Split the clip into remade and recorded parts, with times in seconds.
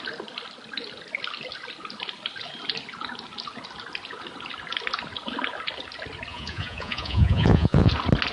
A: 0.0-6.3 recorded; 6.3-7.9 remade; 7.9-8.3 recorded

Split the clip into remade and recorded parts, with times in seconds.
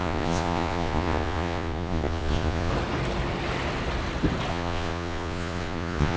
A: 0.0-2.7 remade; 2.7-4.5 recorded; 4.5-6.2 remade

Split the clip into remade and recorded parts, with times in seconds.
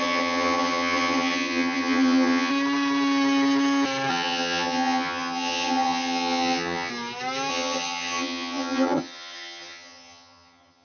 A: 0.0-2.5 remade; 2.5-4.1 recorded; 4.1-6.9 remade; 6.9-7.5 recorded; 7.5-10.8 remade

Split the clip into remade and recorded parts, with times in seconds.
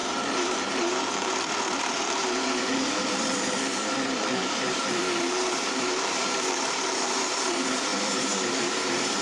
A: 0.0-9.2 remade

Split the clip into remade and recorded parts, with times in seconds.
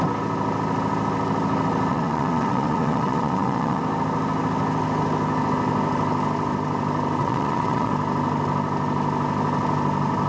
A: 0.0-1.9 recorded; 1.9-3.8 remade; 3.8-7.2 recorded; 7.2-7.9 remade; 7.9-10.3 recorded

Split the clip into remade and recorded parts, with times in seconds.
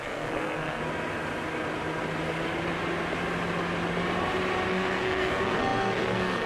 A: 0.0-0.8 remade; 0.8-4.7 recorded; 4.7-6.5 remade